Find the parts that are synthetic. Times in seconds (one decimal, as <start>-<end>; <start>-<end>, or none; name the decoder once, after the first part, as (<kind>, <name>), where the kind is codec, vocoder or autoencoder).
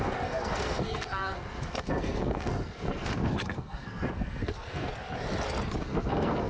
0.0-4.9 (codec, SNAC); 5.8-6.5